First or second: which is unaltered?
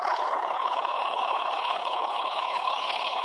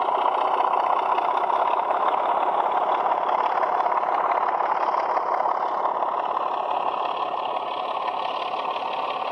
second